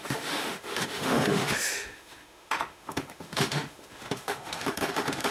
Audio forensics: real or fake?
fake